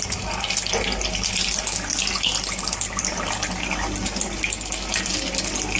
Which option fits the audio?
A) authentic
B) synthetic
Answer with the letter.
A